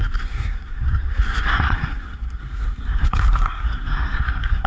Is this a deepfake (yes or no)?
yes